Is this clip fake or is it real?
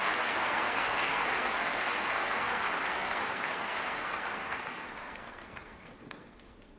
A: fake